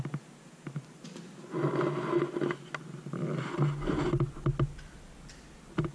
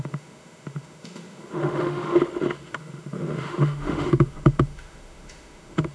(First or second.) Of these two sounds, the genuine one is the first